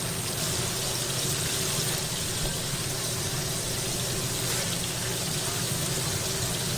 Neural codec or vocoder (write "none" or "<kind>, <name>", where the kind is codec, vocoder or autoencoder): none